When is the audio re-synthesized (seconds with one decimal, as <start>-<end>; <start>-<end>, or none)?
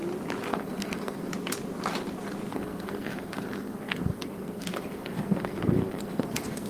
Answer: 0.5-1.3; 2.5-6.7